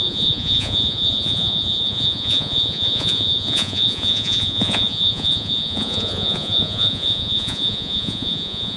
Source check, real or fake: fake